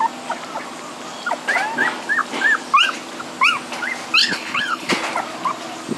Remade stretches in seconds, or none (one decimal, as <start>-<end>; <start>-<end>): 4.2-4.9